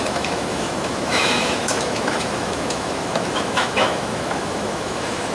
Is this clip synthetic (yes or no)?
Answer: yes